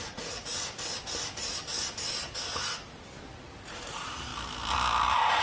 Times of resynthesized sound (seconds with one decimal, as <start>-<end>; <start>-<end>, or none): 0.0-0.5; 3.7-4.3